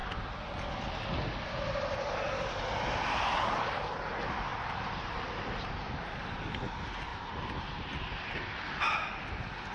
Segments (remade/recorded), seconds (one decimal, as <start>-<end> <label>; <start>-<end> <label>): 0.0-4.5 recorded; 4.5-6.4 remade; 6.4-7.1 recorded; 7.1-7.9 remade; 7.9-9.7 recorded